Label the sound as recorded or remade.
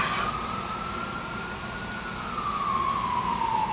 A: recorded